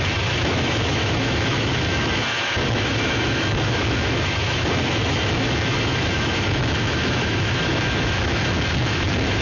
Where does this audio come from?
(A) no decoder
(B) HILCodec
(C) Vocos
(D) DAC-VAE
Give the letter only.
D